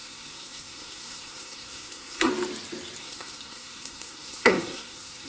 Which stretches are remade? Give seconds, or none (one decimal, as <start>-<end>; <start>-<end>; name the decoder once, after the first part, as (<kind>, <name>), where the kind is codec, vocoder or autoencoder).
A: 0.0-2.3 (codec, SNAC); 3.0-5.3